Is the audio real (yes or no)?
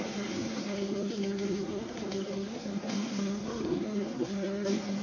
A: no